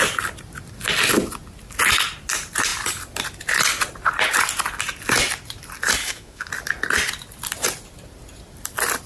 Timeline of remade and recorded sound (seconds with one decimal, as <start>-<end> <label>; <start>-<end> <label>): 0.0-6.0 recorded; 6.0-6.5 remade; 6.5-9.1 recorded